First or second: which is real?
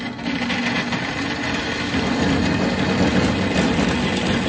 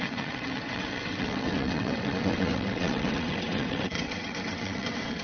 first